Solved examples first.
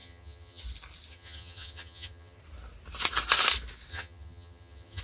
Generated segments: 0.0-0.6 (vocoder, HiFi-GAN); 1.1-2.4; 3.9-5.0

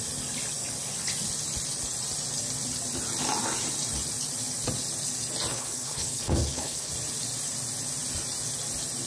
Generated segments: 5.5-6.9 (codec, HILCodec)

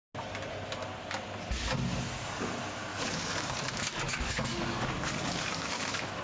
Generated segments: 2.9-6.2 (codec, DAC)

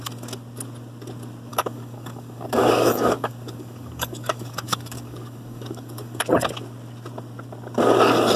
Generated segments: 1.5-6.2 (codec, DAC)

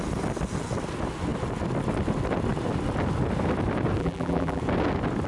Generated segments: 4.0-4.6 (vocoder, BigVGAN v2)

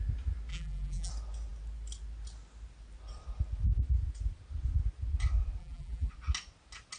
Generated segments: 0.5-1.1 (vocoder, BigVGAN v2); 5.6-6.1

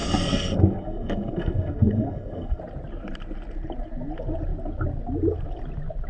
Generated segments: 0.0-2.6 (codec, SNAC)